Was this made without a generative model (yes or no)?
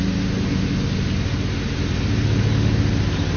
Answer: yes